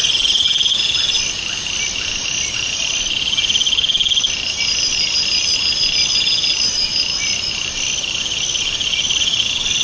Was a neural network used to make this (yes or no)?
no